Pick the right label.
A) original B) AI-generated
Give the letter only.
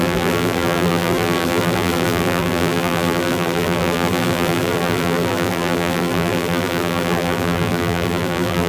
B